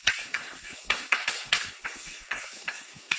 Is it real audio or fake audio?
fake